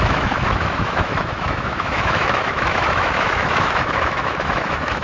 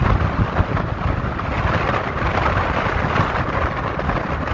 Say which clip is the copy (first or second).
first